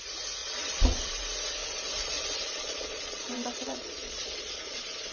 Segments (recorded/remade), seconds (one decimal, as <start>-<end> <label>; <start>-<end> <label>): 0.0-0.4 recorded; 0.4-1.1 remade; 1.1-1.6 recorded; 1.6-5.1 remade